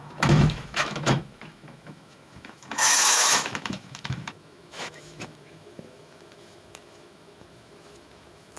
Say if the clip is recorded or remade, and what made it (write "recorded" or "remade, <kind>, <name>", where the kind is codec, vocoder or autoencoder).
remade, autoencoder, DAC-VAE